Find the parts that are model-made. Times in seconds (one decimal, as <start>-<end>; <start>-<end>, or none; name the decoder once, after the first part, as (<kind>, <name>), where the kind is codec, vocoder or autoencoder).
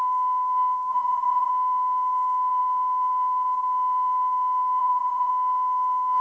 0.9-1.5 (vocoder, Vocos); 4.8-5.3